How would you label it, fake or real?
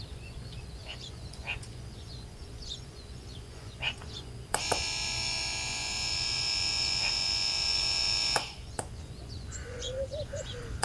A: fake